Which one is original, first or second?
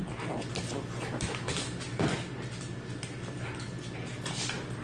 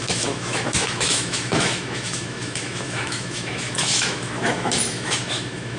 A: first